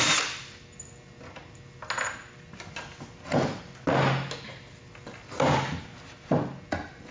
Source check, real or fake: real